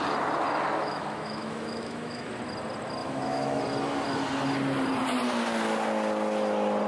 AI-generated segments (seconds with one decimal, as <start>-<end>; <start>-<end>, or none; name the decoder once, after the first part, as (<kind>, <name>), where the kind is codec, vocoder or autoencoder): 0.8-2.3 (autoencoder, DAC-VAE); 3.0-3.6